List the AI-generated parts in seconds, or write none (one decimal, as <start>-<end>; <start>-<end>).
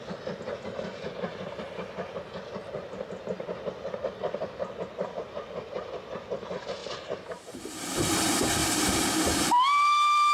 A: 6.8-7.6; 8.6-9.5